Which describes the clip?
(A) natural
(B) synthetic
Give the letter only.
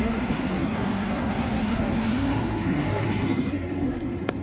B